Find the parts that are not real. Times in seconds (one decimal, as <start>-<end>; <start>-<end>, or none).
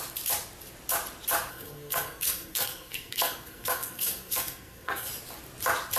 1.5-5.1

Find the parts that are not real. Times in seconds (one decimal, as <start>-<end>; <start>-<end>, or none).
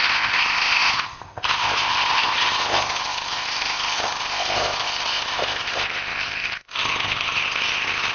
0.0-8.1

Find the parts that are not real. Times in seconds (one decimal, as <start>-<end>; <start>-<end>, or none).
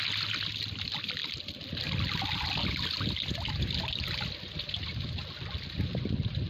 none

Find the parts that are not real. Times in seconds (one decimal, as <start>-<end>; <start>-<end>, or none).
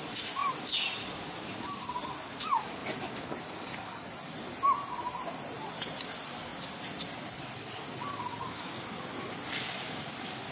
none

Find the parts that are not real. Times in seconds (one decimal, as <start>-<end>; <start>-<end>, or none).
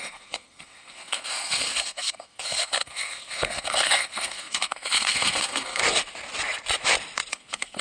0.0-5.8; 7.3-7.8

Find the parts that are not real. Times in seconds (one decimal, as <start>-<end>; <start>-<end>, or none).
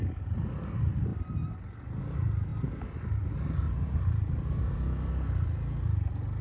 none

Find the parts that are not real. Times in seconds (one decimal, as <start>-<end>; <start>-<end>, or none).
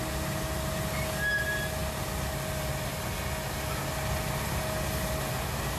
none